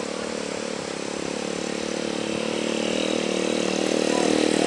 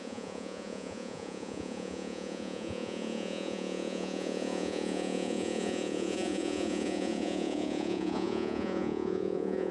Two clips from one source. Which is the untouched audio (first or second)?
first